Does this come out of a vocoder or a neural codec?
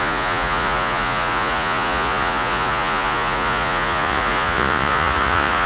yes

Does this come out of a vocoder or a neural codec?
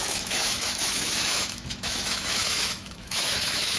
yes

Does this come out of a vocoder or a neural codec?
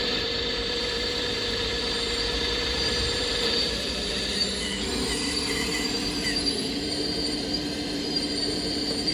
yes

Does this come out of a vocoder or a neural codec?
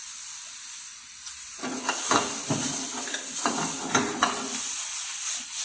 no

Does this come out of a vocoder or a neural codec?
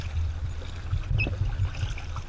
no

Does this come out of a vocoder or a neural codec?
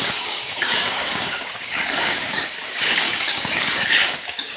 yes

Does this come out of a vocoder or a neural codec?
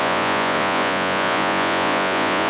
yes